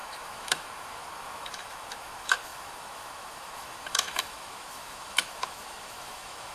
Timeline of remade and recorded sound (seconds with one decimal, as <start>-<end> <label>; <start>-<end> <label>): 0.0-6.5 remade